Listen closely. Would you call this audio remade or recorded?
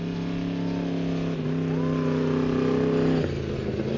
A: recorded